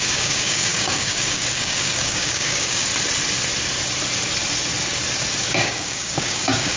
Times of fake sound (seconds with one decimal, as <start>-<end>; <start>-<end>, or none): 0.0-2.9; 5.4-6.8